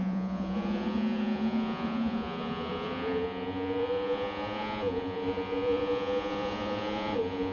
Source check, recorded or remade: remade